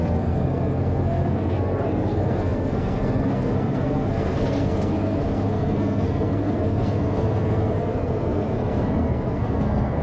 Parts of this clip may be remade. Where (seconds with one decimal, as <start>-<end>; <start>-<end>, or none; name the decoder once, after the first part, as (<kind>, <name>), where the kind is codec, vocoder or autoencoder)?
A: 0.0-10.0 (codec, SNAC)